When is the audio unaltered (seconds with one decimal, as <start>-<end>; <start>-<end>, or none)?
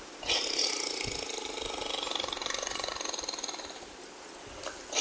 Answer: 0.0-2.4; 2.9-5.0